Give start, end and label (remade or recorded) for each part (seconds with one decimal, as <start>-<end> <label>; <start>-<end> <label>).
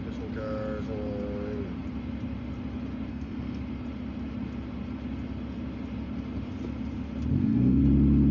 0.0-3.1 recorded; 3.1-3.6 remade; 3.6-7.3 recorded; 7.3-7.8 remade; 7.8-8.3 recorded